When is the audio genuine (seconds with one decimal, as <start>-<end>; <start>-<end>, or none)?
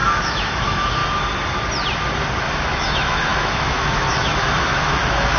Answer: 1.0-2.5